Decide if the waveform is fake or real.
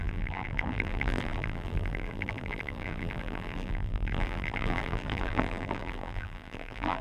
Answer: fake